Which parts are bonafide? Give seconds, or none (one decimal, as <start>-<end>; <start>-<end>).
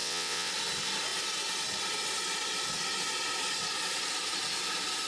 0.5-5.1